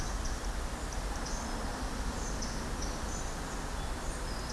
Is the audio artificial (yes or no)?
no